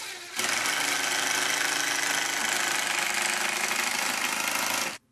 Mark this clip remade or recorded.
recorded